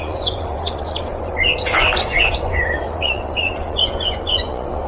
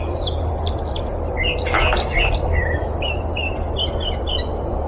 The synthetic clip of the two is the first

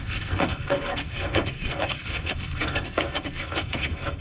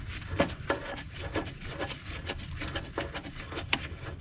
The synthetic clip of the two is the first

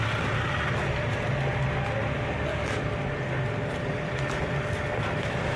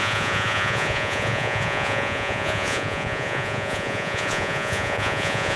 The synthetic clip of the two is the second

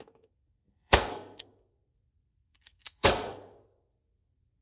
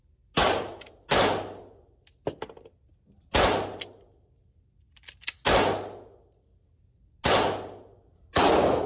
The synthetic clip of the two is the first